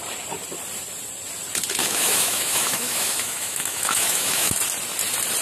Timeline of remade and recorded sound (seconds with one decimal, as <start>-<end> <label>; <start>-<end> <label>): 0.0-1.8 recorded; 1.8-4.5 remade; 4.5-5.4 recorded